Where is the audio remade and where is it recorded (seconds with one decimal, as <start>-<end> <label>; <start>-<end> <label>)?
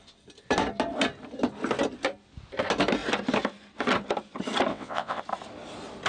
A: 0.0-4.7 recorded; 4.7-5.2 remade; 5.2-6.1 recorded